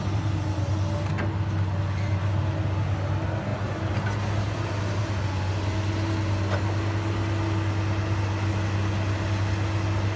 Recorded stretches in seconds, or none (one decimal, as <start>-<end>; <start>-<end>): 0.0-10.2